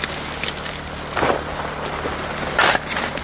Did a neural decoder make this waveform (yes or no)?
no